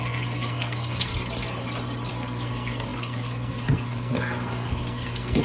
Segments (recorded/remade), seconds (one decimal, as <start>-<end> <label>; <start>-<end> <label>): 0.0-1.1 remade; 1.1-2.1 recorded; 2.1-5.4 remade